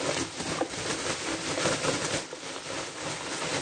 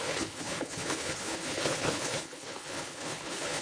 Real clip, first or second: first